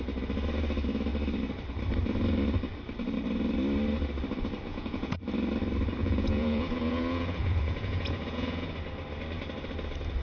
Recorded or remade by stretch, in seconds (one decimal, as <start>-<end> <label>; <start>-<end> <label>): 0.0-4.7 recorded; 4.7-5.2 remade; 5.2-6.0 recorded; 6.0-8.7 remade; 8.7-10.2 recorded